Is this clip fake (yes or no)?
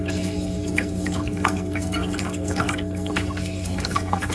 yes